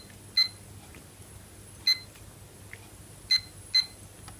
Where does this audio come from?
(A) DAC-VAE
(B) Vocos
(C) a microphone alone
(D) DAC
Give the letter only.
C